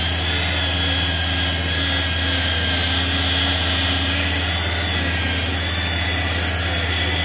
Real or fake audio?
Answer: real